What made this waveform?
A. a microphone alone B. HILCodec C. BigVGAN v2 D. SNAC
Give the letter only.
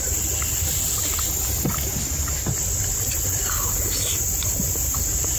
A